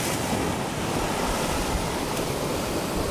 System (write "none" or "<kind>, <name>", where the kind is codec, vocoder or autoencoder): none